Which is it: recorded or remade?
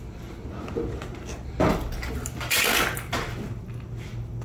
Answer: recorded